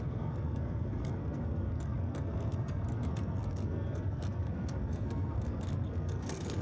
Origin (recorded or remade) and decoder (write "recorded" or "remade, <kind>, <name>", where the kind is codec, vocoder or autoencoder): remade, codec, SNAC